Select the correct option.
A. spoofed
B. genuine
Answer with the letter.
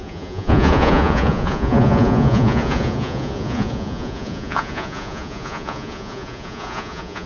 A